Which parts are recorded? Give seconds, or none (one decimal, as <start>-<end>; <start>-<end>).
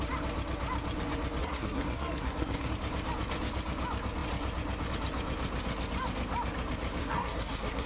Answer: 0.0-1.4; 2.7-7.0